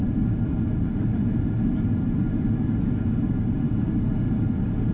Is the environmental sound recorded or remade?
recorded